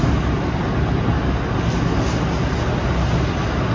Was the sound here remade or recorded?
recorded